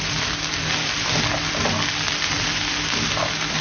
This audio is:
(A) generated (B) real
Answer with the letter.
B